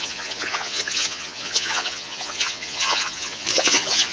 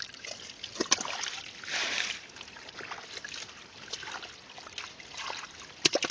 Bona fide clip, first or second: second